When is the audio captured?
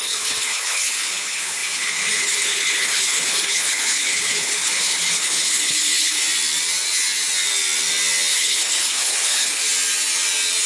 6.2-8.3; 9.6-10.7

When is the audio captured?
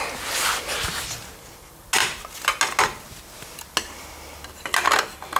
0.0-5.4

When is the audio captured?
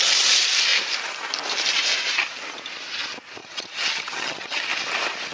0.0-3.4; 4.6-5.3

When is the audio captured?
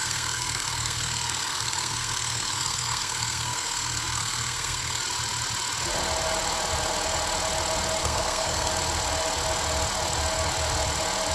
5.0-8.0; 8.7-11.3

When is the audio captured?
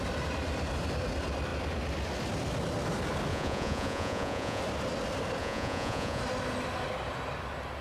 0.0-3.3; 4.6-5.4; 6.2-7.8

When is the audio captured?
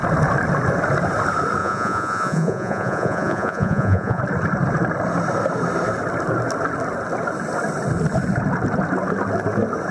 0.0-1.6; 4.2-9.9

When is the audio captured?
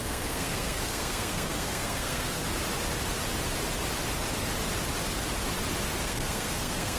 2.4-6.0